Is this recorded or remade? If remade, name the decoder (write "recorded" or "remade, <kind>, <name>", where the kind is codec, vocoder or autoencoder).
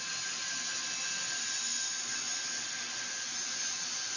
recorded